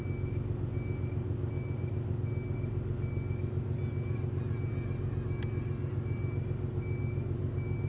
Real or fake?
real